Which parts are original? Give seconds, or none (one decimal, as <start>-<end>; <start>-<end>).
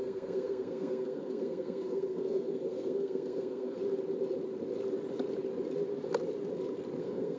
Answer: 3.8-7.0